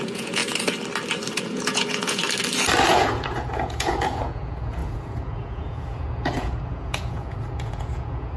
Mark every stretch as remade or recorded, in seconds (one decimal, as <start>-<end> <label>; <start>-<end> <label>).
0.0-0.4 remade; 0.4-1.4 recorded; 1.4-2.2 remade; 2.2-2.9 recorded; 2.9-8.4 remade